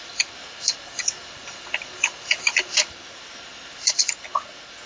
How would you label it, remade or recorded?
recorded